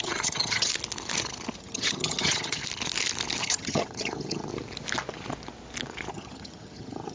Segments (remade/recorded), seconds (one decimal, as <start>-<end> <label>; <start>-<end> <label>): 0.0-0.7 remade; 0.7-1.6 recorded; 1.6-2.6 remade; 2.6-3.4 recorded; 3.4-4.5 remade; 4.5-6.1 recorded; 6.1-7.1 remade